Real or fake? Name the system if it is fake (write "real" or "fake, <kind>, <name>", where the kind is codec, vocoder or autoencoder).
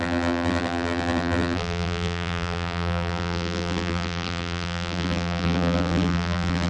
fake, vocoder, BigVGAN v2